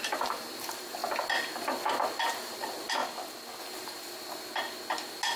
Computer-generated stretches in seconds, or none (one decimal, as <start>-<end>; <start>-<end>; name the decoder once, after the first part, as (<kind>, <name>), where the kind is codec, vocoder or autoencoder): 0.0-1.0 (vocoder, BigVGAN v2); 2.2-3.0; 3.6-4.5